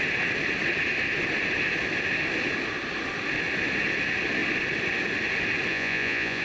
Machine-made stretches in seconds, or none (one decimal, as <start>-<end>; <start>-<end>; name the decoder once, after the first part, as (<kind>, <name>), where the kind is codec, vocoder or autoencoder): 5.7-6.4 (vocoder, Vocos)